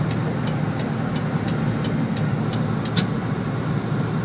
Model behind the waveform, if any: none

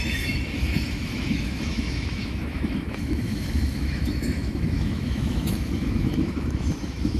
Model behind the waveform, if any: autoencoder, DAC-VAE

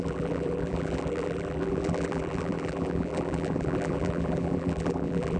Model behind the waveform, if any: vocoder, BigVGAN v2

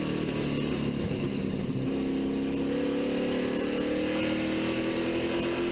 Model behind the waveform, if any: none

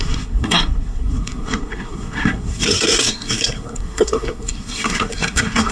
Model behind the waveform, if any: codec, SNAC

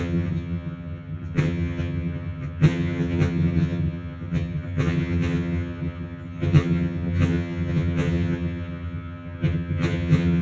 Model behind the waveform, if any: vocoder, HiFi-GAN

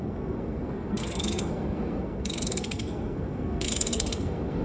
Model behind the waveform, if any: codec, SNAC